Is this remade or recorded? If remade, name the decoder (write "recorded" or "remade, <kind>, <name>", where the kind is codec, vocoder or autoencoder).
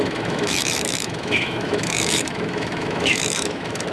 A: remade, autoencoder, DAC-VAE